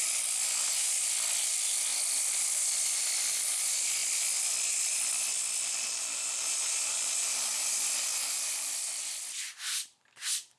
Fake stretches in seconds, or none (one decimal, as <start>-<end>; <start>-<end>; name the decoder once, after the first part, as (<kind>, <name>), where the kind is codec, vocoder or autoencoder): none